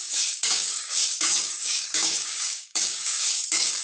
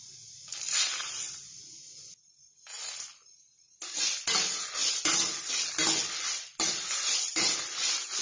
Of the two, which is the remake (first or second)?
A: first